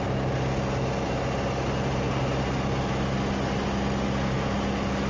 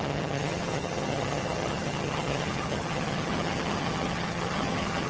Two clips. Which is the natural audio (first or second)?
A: first